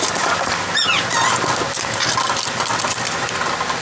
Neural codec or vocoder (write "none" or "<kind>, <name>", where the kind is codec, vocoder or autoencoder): none